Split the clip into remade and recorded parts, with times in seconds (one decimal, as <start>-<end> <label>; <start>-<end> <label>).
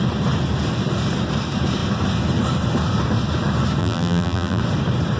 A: 0.0-3.8 recorded; 3.8-4.6 remade; 4.6-5.2 recorded